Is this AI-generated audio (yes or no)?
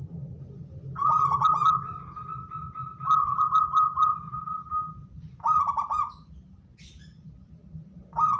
no